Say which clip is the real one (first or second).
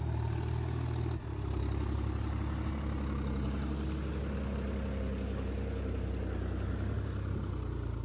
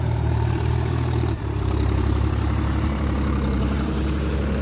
first